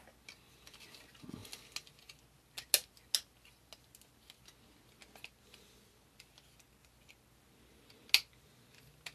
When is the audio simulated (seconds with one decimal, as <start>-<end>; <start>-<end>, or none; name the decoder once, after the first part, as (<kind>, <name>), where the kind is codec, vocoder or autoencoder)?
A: none